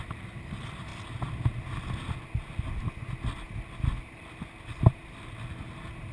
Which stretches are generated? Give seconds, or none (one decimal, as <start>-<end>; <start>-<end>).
0.0-0.9; 4.6-6.1